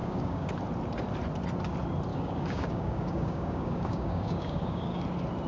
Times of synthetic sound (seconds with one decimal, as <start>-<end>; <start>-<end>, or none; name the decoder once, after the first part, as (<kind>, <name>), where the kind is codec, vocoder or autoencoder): 0.0-0.5 (codec, DAC); 2.1-5.0